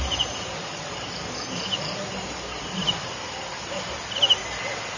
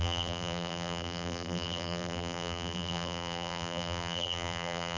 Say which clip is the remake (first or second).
second